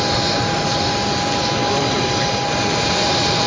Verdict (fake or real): real